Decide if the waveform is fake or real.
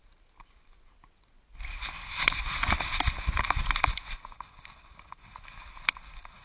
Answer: real